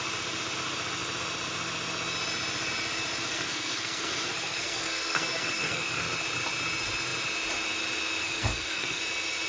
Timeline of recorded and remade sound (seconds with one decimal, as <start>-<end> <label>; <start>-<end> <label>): 0.0-3.3 recorded; 3.3-6.0 remade; 6.0-8.2 recorded; 8.2-9.0 remade; 9.0-9.5 recorded